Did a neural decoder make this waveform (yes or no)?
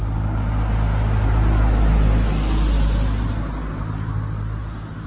no